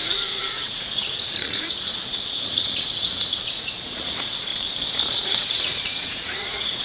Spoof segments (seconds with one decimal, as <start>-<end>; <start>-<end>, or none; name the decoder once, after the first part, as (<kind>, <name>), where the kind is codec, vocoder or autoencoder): 0.0-4.5 (vocoder, Vocos); 5.1-6.8